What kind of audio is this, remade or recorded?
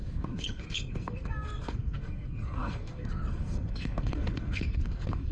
remade